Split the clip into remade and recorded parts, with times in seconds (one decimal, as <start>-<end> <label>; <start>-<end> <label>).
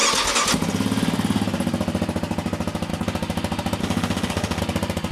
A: 0.0-3.8 recorded; 3.8-4.6 remade; 4.6-5.1 recorded